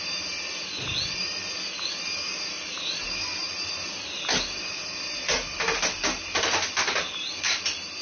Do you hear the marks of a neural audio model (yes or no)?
no